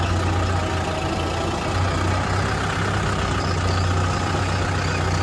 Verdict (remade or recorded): recorded